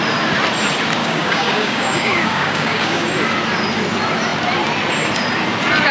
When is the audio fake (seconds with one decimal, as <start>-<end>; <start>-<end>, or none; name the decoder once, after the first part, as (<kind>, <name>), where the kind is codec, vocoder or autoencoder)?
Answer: 1.0-3.1 (codec, DAC)